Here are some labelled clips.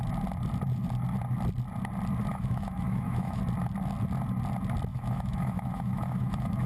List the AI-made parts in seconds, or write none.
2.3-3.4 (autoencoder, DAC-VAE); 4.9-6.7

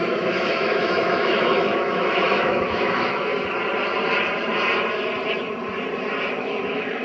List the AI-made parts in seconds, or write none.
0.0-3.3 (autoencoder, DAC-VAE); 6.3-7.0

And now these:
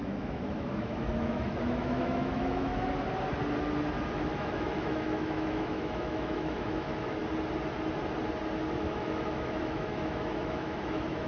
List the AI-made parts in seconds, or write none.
0.0-2.7 (autoencoder, DAC-VAE); 4.3-7.2; 8.8-11.3